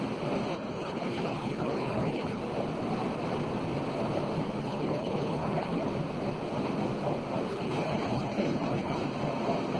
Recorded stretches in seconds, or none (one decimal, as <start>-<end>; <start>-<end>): 0.0-0.5; 2.4-4.6; 5.9-7.5; 9.0-9.8